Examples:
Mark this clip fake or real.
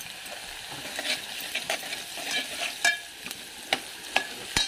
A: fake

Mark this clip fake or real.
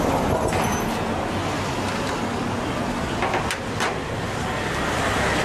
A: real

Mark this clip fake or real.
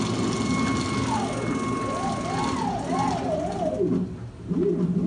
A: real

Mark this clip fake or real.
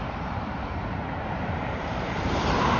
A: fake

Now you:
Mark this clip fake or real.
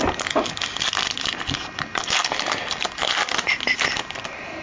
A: real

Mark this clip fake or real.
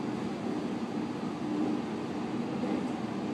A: real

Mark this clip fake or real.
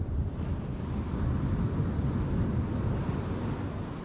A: real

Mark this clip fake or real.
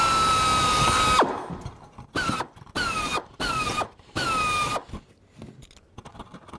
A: real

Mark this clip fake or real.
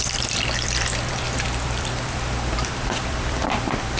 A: fake